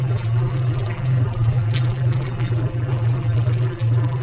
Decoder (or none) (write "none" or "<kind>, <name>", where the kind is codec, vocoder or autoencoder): vocoder, BigVGAN v2